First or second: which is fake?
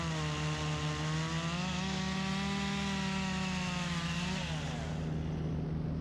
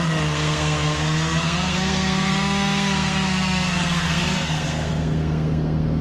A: second